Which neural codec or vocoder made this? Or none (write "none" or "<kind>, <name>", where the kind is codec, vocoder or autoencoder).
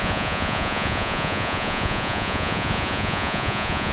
vocoder, Vocos